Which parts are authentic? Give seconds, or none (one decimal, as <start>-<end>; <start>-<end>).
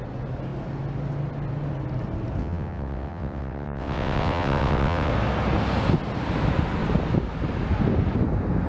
0.0-2.4; 5.1-8.7